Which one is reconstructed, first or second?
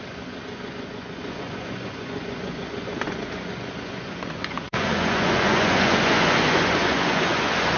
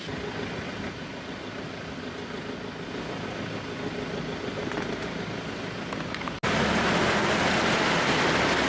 first